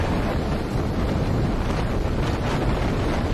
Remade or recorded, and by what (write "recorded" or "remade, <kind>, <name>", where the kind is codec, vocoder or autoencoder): recorded